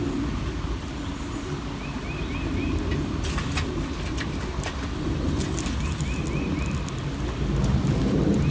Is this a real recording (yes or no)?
yes